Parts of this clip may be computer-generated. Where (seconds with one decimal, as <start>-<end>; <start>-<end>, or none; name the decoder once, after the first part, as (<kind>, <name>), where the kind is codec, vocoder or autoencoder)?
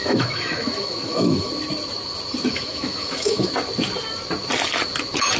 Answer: 0.0-1.5 (autoencoder, DAC-VAE); 2.5-3.5